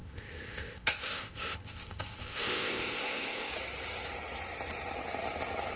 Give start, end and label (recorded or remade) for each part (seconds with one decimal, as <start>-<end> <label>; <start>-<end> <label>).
0.0-3.5 remade; 3.5-5.8 recorded